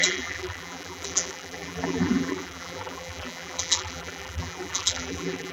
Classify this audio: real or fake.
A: fake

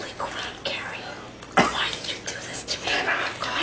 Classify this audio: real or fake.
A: real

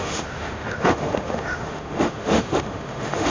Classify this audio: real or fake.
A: fake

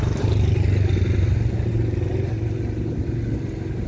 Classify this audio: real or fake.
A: real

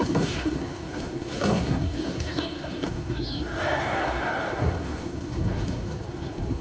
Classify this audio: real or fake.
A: fake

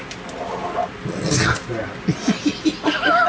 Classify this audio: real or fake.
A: real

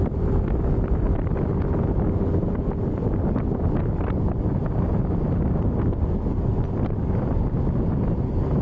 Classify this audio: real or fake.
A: real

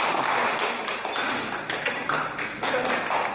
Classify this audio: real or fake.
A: real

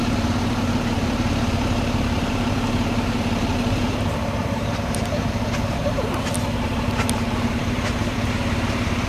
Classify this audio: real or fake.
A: fake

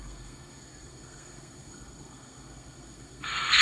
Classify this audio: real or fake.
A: fake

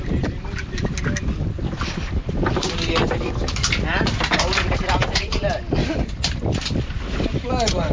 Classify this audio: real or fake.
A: real